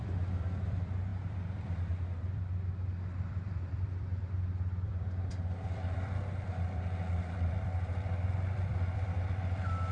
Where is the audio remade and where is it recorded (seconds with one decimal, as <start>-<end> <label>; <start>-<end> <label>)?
0.0-9.9 remade

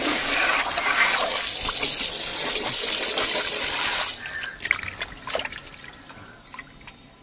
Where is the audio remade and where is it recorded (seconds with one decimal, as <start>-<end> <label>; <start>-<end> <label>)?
0.0-2.3 recorded; 2.3-2.9 remade; 2.9-7.2 recorded

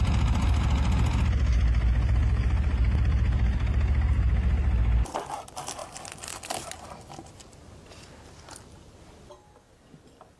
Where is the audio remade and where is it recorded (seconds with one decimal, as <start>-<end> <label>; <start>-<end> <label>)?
0.0-10.4 recorded

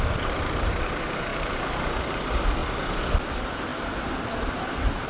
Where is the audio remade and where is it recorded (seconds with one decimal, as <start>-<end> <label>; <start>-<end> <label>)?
0.0-1.3 remade; 1.3-2.0 recorded; 2.0-2.6 remade; 2.6-3.3 recorded; 3.3-3.7 remade; 3.7-4.5 recorded; 4.5-5.1 remade

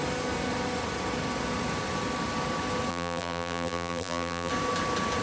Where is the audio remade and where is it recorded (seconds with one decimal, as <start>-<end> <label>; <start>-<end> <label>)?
0.0-2.9 recorded; 2.9-4.5 remade; 4.5-5.2 recorded

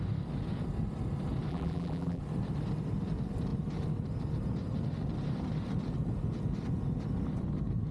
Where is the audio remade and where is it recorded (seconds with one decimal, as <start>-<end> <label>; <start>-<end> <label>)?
0.0-1.5 recorded; 1.5-2.2 remade; 2.2-7.9 recorded

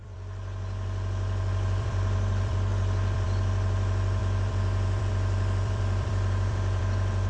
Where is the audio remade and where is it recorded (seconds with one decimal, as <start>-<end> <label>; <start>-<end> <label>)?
0.0-7.3 remade

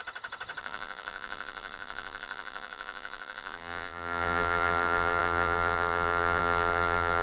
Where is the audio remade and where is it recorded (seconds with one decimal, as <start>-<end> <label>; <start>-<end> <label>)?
0.0-0.6 recorded; 0.6-7.2 remade